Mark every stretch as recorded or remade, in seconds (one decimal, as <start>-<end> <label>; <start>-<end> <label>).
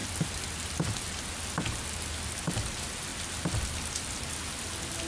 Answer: 0.0-5.1 recorded